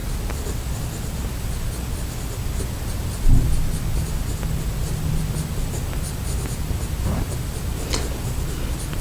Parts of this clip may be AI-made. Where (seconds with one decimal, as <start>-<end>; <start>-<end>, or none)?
0.0-0.8